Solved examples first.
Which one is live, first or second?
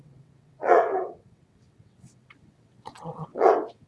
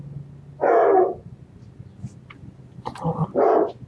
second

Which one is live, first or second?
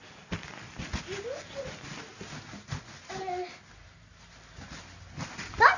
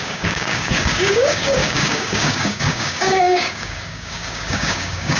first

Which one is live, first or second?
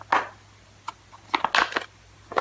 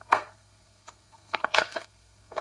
first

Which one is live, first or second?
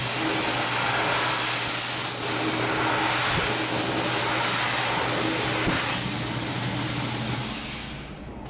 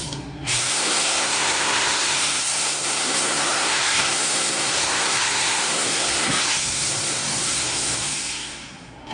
first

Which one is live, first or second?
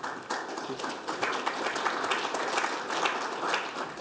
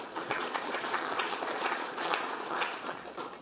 first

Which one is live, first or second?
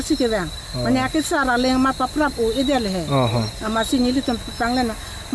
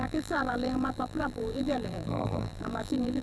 first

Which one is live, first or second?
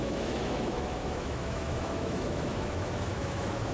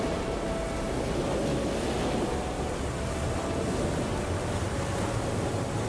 second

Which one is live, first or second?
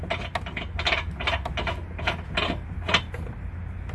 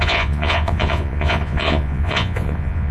first